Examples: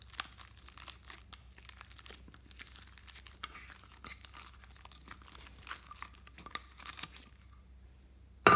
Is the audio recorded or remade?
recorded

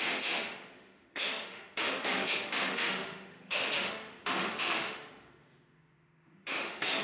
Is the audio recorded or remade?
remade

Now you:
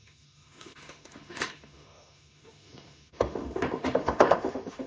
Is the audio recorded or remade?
remade